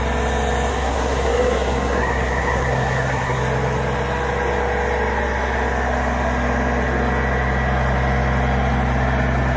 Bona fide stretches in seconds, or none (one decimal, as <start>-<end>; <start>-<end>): 0.0-0.7; 3.4-9.6

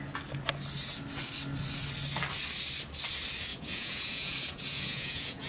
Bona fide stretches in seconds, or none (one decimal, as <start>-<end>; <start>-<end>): 0.0-3.5

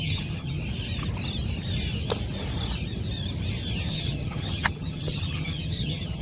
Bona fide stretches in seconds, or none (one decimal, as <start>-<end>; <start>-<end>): 0.6-3.9

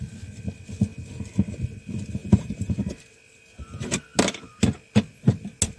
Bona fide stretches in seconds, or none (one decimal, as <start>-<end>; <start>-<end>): 0.0-2.2; 2.8-5.8

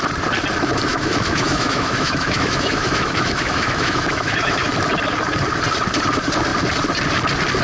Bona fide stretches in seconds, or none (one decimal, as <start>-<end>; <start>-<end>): 0.0-0.9; 4.7-7.6

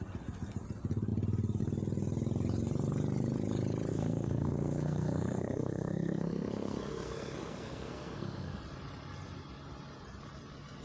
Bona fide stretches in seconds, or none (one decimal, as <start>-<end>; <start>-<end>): 0.0-3.9; 8.6-10.8

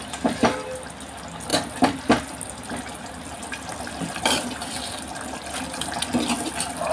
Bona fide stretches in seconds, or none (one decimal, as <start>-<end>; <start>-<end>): 0.0-6.9

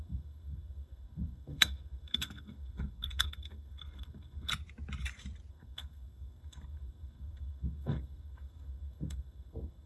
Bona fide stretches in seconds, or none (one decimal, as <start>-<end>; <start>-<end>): 4.5-5.5